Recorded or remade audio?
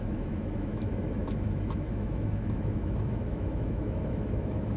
remade